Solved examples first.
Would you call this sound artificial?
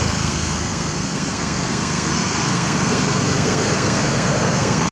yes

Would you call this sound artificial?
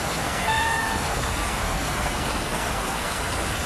yes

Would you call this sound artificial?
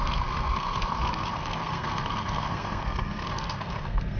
yes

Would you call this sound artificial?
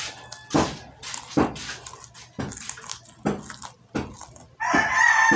no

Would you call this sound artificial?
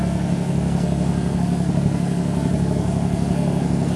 yes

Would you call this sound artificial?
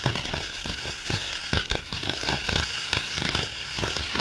yes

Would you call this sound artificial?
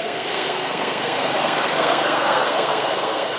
yes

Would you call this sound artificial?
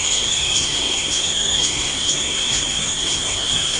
yes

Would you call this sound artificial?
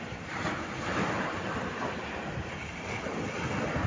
no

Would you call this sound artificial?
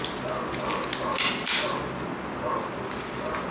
no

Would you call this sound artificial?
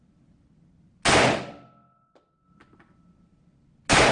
no